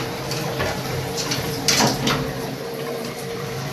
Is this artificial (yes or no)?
yes